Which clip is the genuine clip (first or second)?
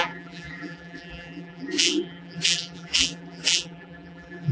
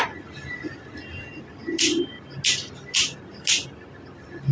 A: second